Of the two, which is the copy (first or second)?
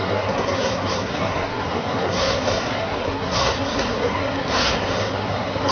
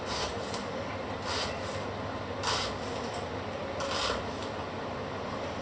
first